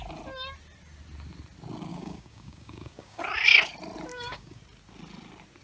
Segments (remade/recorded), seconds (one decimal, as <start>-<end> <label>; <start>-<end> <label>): 0.0-1.9 recorded; 1.9-3.2 remade; 3.2-4.1 recorded; 4.1-4.6 remade; 4.6-5.6 recorded